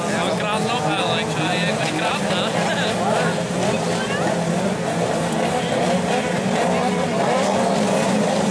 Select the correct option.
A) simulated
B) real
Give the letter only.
B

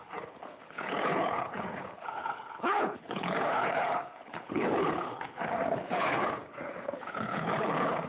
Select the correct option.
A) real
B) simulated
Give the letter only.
B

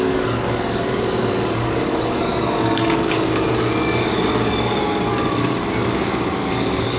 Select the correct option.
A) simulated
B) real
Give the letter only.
A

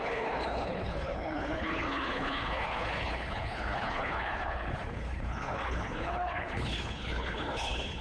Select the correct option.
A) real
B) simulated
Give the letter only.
B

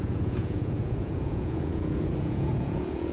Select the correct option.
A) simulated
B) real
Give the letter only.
A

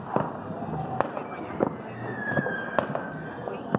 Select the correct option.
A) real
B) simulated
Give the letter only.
A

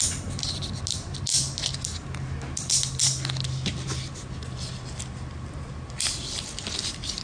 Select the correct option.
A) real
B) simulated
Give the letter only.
A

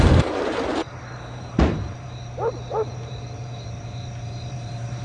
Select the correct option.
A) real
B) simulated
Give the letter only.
B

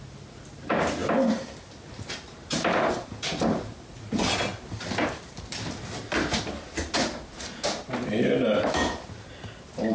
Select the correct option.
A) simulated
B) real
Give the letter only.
B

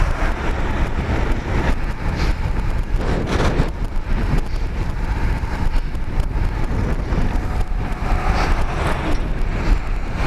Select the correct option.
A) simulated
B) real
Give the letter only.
B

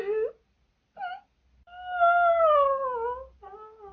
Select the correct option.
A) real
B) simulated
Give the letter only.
A